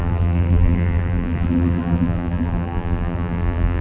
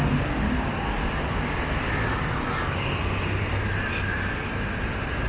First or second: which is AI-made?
first